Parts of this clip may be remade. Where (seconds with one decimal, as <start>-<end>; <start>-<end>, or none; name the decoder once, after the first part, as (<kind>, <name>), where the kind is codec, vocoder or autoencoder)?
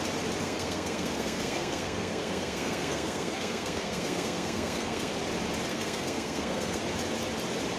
0.4-5.1 (codec, SNAC); 5.7-6.8